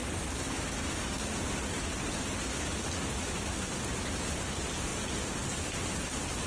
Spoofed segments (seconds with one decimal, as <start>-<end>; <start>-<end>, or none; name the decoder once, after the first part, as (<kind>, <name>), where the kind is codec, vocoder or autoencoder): none